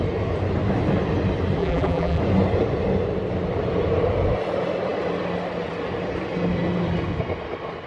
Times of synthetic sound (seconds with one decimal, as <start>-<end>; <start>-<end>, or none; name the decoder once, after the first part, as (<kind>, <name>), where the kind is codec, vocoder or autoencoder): 1.6-2.2 (vocoder, BigVGAN v2)